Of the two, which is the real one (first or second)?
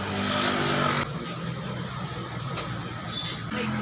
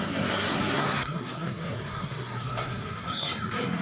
first